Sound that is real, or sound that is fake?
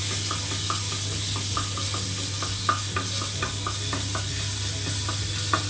real